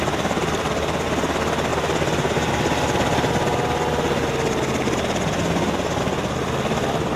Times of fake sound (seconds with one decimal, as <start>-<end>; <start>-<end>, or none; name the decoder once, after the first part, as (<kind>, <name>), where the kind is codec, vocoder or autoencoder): 0.0-1.7 (vocoder, BigVGAN v2); 6.0-7.2